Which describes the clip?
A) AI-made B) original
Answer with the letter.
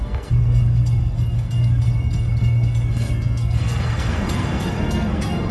A